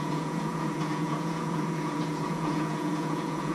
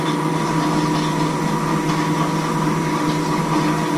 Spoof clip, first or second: first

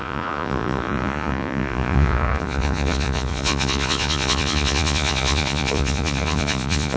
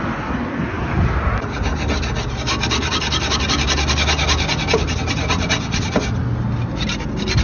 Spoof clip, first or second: first